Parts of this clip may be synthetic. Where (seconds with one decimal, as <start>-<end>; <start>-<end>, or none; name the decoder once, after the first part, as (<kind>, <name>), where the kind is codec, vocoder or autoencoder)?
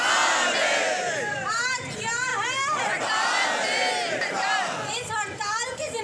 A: none